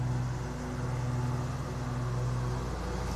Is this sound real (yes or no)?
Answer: yes